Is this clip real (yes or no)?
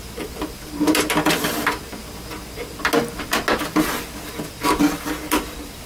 yes